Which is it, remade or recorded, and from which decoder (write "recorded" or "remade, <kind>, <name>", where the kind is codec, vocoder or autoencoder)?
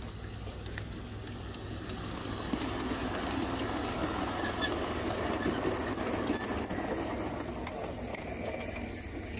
recorded